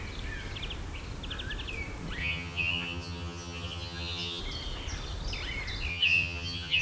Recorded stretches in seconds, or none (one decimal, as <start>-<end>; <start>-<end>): 0.0-2.2; 4.4-5.9